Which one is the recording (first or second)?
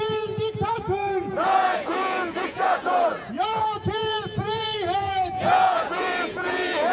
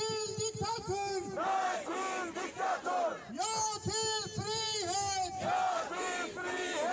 second